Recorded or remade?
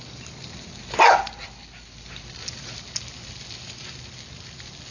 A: recorded